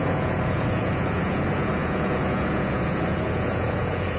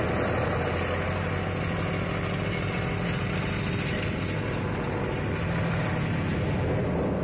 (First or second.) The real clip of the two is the second